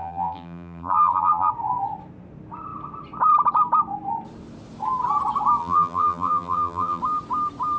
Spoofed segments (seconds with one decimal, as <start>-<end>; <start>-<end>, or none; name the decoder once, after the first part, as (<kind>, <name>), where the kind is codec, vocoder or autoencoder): 0.0-1.5 (vocoder, BigVGAN v2); 5.6-7.0